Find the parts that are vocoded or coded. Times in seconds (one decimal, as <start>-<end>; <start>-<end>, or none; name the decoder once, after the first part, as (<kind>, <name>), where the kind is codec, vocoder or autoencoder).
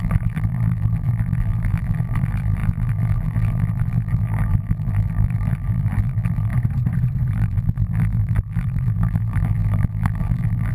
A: 0.0-6.5 (vocoder, BigVGAN v2); 7.3-10.7